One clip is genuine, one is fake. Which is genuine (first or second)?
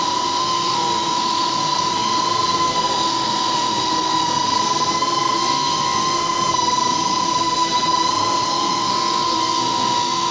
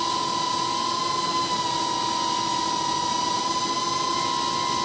second